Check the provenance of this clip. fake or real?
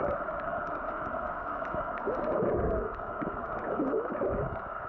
fake